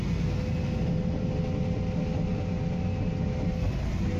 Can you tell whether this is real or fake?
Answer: real